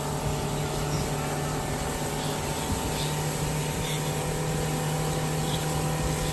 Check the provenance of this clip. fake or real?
real